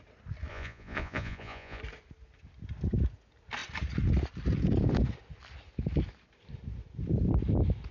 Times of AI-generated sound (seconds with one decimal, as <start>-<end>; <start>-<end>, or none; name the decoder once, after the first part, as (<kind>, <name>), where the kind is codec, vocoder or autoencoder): 0.5-1.8 (vocoder, Vocos)